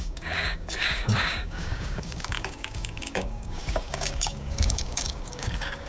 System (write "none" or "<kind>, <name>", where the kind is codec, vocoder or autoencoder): codec, DAC